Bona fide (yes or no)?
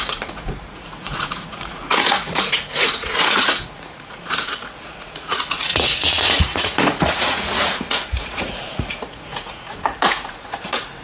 no